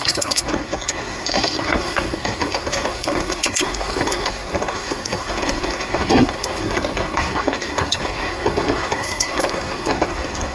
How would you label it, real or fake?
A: fake